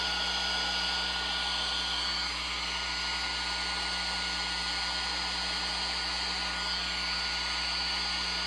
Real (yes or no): yes